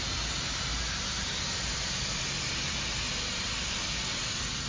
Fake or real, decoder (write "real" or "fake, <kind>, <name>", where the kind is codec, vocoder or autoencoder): real